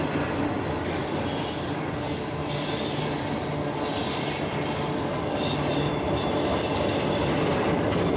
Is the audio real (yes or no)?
yes